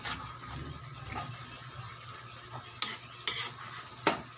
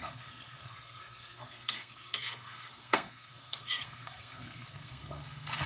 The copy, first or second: second